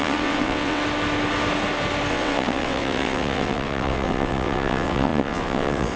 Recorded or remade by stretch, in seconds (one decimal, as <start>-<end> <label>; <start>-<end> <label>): 0.0-0.8 remade; 0.8-2.1 recorded; 2.1-6.0 remade